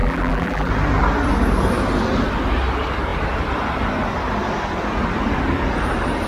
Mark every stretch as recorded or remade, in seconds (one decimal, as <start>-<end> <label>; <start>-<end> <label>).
0.0-0.7 remade; 0.7-6.3 recorded

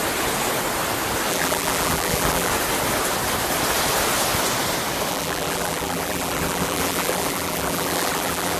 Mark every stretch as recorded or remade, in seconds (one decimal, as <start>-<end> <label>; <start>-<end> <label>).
0.0-1.3 recorded; 1.3-2.5 remade; 2.5-5.1 recorded; 5.1-8.6 remade